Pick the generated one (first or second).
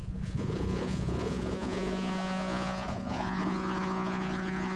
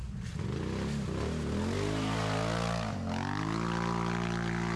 first